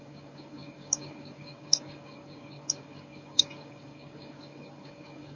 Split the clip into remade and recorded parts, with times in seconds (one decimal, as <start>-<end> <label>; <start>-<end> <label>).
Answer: 0.0-5.3 remade

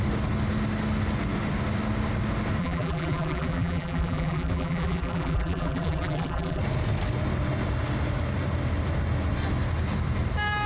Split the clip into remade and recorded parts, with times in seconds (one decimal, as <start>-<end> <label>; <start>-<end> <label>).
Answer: 0.0-2.6 recorded; 2.6-6.6 remade; 6.6-10.7 recorded